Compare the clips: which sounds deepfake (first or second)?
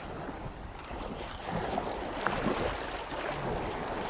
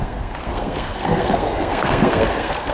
second